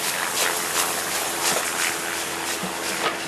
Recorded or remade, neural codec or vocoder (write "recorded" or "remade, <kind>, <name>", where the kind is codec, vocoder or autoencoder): recorded